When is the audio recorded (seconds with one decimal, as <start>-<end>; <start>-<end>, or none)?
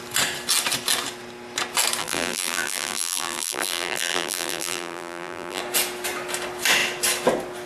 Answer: 0.0-2.0; 5.6-7.7